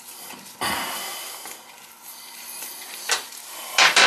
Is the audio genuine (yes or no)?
no